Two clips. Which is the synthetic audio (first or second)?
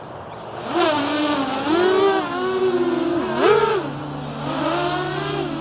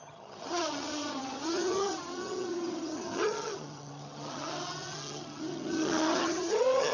second